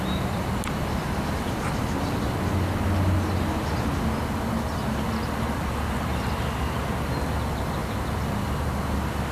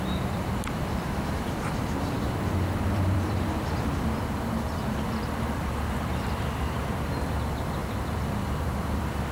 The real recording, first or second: first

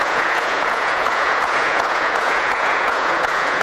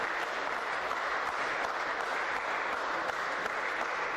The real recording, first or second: second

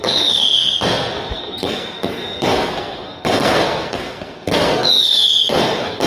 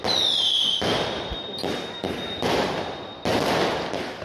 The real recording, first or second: second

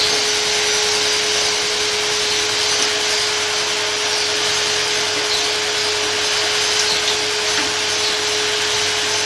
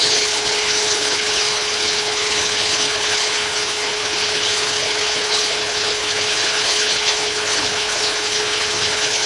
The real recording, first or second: first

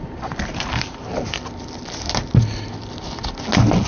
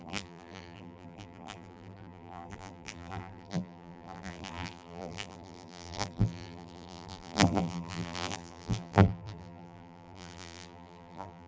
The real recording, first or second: first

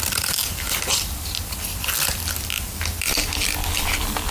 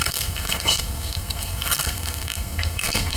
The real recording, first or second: first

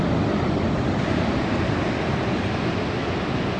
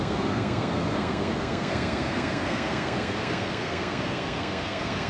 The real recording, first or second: first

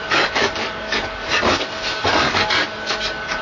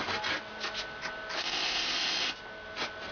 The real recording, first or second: second